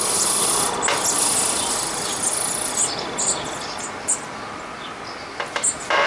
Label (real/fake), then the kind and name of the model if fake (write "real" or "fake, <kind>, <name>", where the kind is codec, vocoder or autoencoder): real